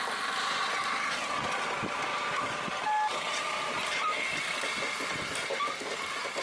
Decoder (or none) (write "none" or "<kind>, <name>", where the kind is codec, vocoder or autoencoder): none